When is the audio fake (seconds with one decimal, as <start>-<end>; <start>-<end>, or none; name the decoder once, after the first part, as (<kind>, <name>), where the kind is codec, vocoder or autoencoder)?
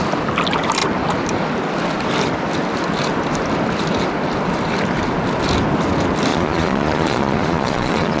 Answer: 6.3-8.2 (vocoder, Vocos)